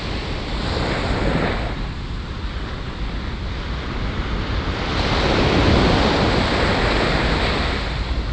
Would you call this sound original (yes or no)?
yes